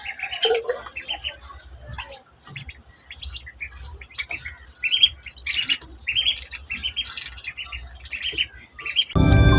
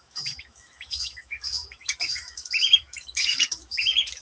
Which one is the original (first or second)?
first